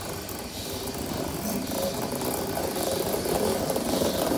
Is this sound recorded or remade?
recorded